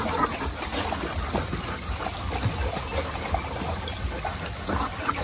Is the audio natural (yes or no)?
yes